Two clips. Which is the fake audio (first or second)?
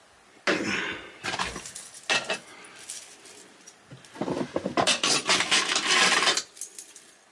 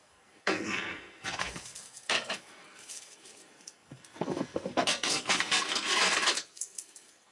second